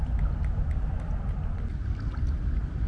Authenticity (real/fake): real